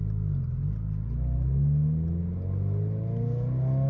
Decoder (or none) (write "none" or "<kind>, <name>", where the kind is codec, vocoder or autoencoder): none